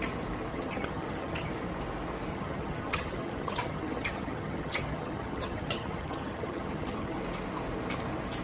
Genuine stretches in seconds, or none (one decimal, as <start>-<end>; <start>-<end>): 0.0-0.5; 1.5-2.3; 7.2-8.4